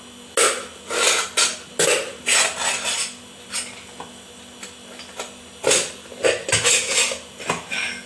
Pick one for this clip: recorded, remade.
recorded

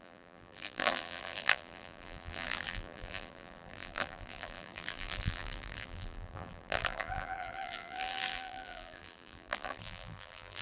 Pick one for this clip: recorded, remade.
remade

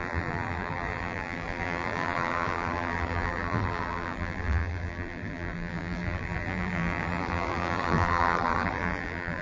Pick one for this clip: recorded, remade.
remade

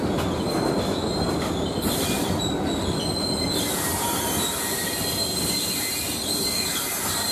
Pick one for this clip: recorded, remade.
recorded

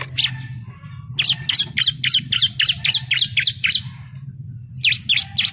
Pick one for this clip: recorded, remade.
recorded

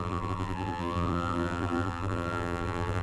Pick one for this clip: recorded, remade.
remade